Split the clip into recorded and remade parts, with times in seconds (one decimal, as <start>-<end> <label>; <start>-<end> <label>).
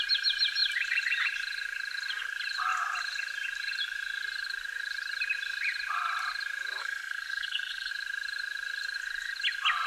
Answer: 0.0-6.8 recorded; 6.8-7.9 remade; 7.9-9.9 recorded